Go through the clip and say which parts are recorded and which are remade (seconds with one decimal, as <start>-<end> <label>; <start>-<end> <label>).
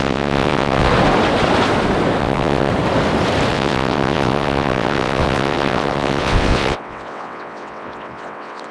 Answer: 0.0-0.9 remade; 0.9-2.2 recorded; 2.2-2.7 remade; 2.7-3.5 recorded; 3.5-8.7 remade